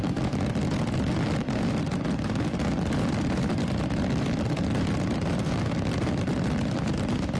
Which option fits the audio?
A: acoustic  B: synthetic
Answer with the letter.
A